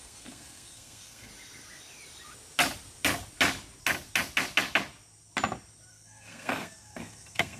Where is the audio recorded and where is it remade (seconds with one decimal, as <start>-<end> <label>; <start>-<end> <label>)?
0.0-1.3 remade; 1.3-5.9 recorded; 5.9-7.6 remade

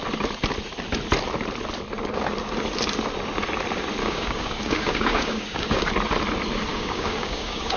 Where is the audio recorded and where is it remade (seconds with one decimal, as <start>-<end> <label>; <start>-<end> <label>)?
0.0-4.0 recorded; 4.0-5.9 remade; 5.9-6.7 recorded; 6.7-7.8 remade

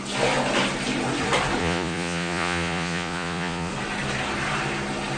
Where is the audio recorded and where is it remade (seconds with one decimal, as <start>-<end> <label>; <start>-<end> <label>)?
0.0-1.6 recorded; 1.6-3.7 remade; 3.7-5.2 recorded

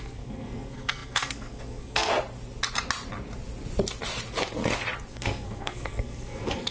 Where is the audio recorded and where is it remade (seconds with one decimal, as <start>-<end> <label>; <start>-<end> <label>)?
0.0-2.1 remade; 2.1-5.1 recorded; 5.1-6.7 remade

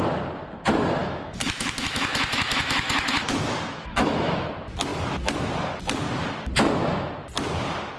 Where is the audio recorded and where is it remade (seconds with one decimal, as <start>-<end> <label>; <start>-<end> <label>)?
0.0-1.0 recorded; 1.0-4.5 remade; 4.5-8.0 recorded

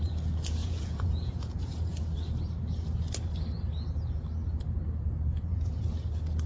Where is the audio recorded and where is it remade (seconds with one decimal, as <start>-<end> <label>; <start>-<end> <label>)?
0.0-0.6 recorded; 0.6-1.7 remade; 1.7-5.3 recorded; 5.3-5.8 remade; 5.8-6.5 recorded